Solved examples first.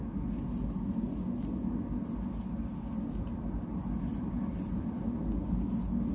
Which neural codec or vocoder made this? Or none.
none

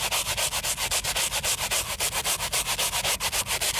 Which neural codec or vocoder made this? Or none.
none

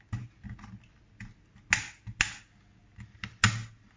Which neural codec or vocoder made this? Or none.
none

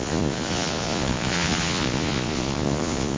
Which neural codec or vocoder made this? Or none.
vocoder, Vocos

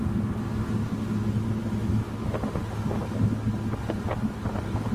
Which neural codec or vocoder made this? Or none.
none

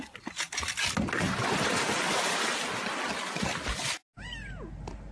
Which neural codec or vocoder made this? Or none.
none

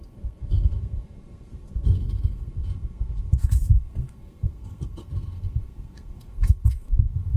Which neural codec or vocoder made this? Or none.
codec, SNAC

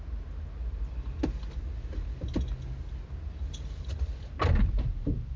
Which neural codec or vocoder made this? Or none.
none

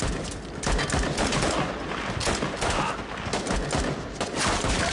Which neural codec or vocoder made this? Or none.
none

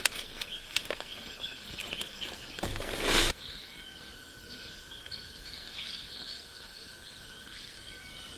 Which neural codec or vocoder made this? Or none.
codec, SNAC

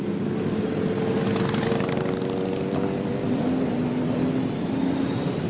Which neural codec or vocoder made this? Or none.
none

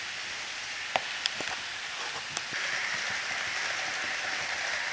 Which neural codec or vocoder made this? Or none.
none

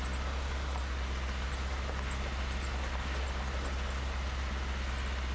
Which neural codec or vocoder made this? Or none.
none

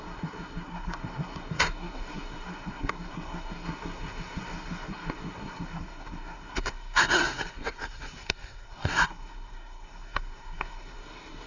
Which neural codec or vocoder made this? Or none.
codec, SNAC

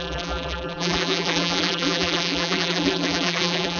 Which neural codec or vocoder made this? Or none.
vocoder, BigVGAN v2